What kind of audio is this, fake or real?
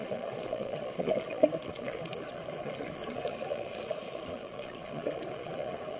fake